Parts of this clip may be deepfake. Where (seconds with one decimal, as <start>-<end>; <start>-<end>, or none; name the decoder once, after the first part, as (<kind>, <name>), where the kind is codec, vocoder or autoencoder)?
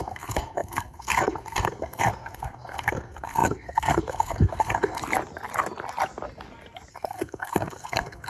0.0-5.0 (codec, SNAC); 6.9-8.3